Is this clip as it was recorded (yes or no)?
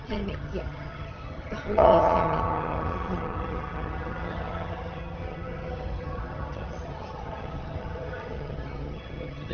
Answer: no